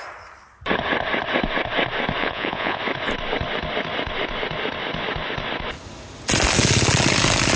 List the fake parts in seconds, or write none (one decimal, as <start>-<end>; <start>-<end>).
2.2-2.8